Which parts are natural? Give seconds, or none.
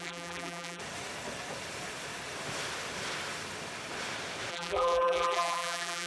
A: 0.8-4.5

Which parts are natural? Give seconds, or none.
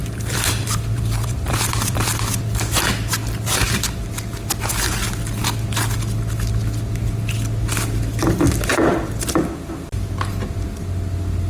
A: 2.1-8.7; 10.3-11.5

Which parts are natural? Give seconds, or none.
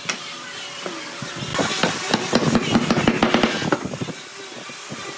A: 0.0-1.5; 2.9-5.2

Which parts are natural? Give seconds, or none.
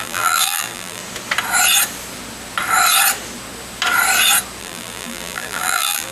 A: 1.0-4.6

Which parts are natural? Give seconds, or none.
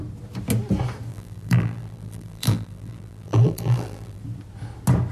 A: 0.0-1.1; 4.2-5.1